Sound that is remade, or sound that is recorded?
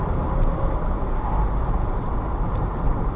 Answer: recorded